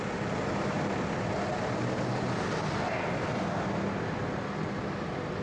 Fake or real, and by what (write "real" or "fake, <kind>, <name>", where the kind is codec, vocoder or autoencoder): real